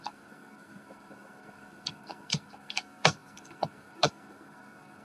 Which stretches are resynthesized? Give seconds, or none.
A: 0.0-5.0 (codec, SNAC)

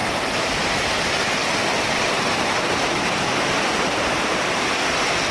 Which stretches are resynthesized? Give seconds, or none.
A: 0.0-0.7 (vocoder, BigVGAN v2); 1.4-4.6

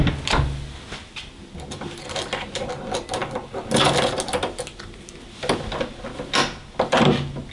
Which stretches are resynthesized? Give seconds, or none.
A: none

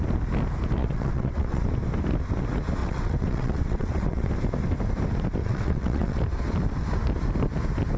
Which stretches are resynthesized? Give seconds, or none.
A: 0.8-1.6 (vocoder, WaveNeXt); 2.8-4.3; 5.4-6.2

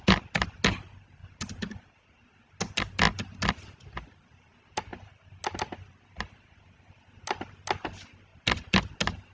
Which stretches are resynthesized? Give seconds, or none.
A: none

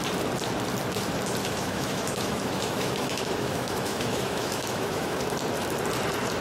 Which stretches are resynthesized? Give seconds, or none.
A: 1.4-5.2 (autoencoder, DAC-VAE)

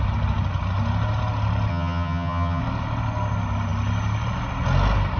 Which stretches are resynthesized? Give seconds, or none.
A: 1.7-2.6 (vocoder, HiFi-GAN)

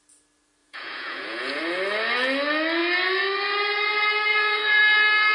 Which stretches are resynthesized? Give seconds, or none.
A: 0.6-1.6 (vocoder, Vocos); 4.3-4.8